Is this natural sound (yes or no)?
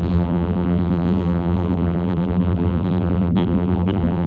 no